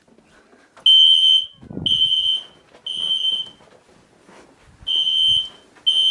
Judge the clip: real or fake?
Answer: real